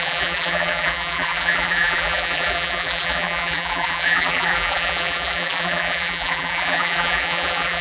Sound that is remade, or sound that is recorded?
remade